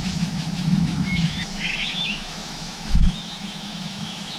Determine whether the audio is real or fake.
fake